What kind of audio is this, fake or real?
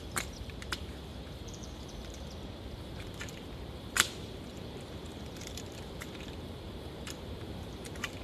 fake